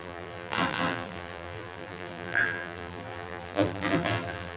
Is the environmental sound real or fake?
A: fake